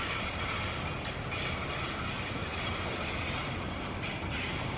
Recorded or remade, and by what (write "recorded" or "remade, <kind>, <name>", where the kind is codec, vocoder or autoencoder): recorded